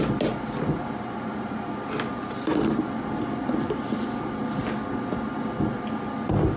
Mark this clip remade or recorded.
recorded